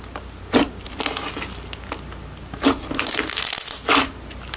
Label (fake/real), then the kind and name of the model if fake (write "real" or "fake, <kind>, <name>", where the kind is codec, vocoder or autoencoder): real